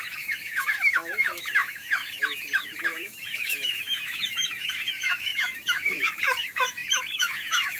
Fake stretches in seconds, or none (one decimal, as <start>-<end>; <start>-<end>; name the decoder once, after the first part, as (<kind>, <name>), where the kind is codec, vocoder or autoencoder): 0.0-7.8 (autoencoder, DAC-VAE)